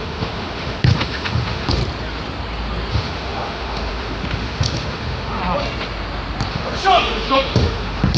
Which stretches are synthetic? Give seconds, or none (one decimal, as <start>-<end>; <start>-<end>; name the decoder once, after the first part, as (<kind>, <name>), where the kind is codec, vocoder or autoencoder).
0.0-1.8 (autoencoder, DAC-VAE); 2.9-5.4; 6.5-8.2